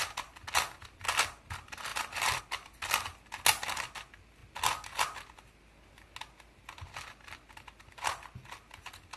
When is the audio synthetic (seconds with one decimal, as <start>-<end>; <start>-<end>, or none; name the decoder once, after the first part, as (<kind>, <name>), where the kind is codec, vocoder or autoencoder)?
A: none